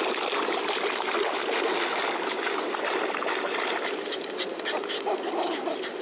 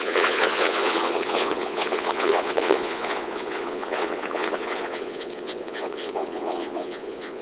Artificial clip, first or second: second